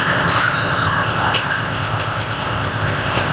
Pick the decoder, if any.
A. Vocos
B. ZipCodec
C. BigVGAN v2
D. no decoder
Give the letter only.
B